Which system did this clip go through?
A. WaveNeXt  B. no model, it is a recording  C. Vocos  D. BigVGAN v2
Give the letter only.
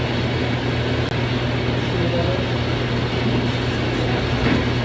B